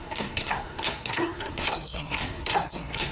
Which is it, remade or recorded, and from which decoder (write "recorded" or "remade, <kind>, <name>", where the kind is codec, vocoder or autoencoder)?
remade, codec, SNAC